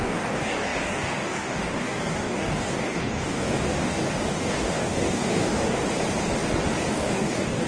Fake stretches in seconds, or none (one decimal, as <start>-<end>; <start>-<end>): 0.0-5.8; 6.9-7.7